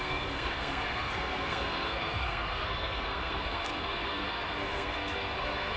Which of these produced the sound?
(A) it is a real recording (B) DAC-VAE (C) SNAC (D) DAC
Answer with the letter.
C